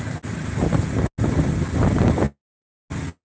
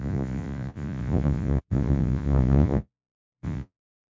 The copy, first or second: second